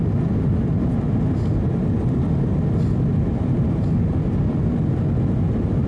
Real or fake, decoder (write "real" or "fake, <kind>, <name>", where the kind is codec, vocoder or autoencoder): real